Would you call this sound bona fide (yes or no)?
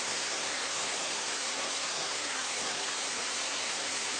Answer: no